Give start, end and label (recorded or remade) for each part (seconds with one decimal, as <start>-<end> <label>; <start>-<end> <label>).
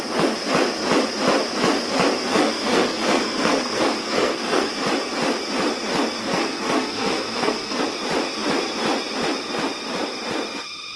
0.0-2.3 recorded; 2.3-4.7 remade; 4.7-6.2 recorded; 6.2-7.8 remade; 7.8-11.0 recorded